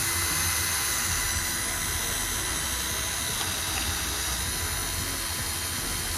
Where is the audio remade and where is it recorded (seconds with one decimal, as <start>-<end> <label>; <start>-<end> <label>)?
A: 0.0-6.2 recorded